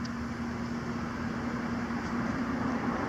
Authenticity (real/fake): real